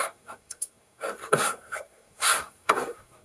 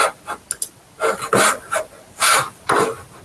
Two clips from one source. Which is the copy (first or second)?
first